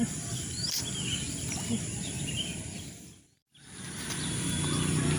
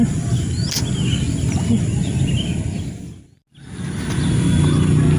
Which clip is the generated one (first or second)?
first